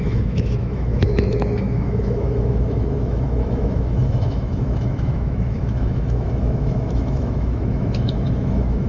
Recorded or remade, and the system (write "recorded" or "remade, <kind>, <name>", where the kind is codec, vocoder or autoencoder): remade, autoencoder, DAC-VAE